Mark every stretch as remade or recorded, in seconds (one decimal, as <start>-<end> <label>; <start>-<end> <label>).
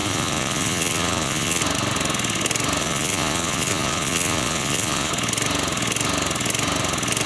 0.0-1.6 remade; 1.6-2.8 recorded; 2.8-5.1 remade; 5.1-7.3 recorded